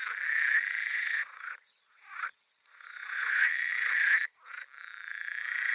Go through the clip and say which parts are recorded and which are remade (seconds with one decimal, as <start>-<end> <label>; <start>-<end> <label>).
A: 0.0-0.9 recorded; 0.9-3.5 remade; 3.5-5.7 recorded